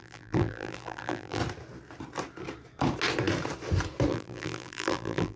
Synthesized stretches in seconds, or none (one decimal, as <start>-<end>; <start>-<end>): 0.0-1.4; 4.1-5.4